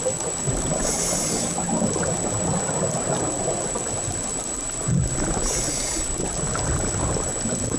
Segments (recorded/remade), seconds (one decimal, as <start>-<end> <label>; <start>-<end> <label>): 0.0-7.3 remade; 7.3-7.8 recorded

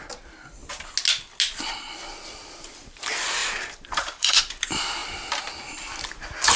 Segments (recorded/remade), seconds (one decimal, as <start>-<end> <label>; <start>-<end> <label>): 0.0-3.4 recorded; 3.4-4.4 remade; 4.4-6.6 recorded